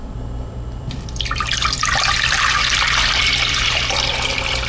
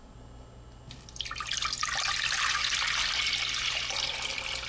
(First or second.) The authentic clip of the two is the second